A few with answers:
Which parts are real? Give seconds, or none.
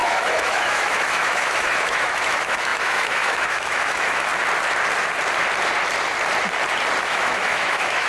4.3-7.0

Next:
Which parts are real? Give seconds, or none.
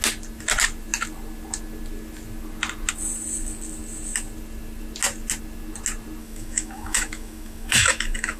0.0-6.2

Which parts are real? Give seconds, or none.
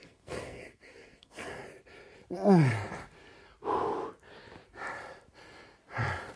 1.5-6.4